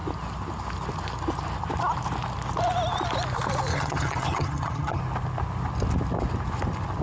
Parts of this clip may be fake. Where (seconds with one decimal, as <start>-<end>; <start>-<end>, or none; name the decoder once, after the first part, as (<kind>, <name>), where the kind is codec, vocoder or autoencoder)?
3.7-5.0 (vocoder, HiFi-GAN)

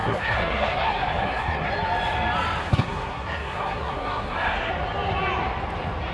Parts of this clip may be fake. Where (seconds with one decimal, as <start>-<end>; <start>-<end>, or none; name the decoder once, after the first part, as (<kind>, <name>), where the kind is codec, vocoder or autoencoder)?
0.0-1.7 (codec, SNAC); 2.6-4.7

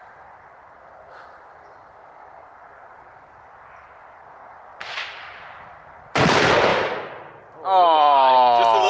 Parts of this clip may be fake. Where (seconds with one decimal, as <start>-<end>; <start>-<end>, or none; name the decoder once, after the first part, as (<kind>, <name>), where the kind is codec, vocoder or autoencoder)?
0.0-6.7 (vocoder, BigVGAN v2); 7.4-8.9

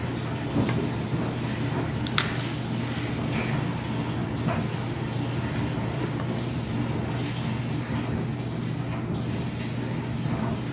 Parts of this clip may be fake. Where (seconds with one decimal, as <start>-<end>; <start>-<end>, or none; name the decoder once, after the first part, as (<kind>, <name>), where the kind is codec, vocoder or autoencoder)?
4.2-6.6 (vocoder, BigVGAN v2)

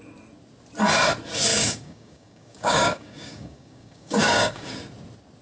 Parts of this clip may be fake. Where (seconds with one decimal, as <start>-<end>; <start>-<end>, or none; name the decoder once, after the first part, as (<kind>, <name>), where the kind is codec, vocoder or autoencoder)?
1.5-4.7 (codec, DAC)

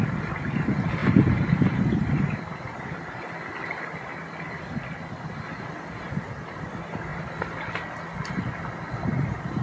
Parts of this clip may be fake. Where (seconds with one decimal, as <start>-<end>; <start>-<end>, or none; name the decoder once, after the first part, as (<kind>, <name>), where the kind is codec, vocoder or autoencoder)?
1.0-3.3 (vocoder, BigVGAN v2)